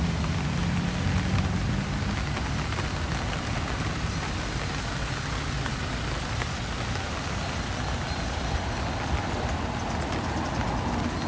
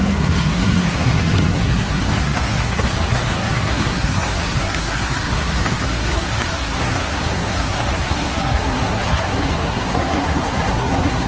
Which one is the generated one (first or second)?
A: second